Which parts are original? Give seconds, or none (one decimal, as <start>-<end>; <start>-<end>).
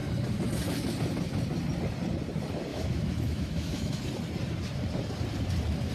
0.0-2.7; 4.0-5.9